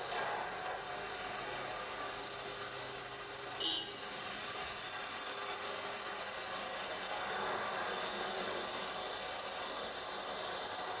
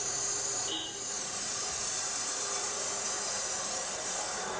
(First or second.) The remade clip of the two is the second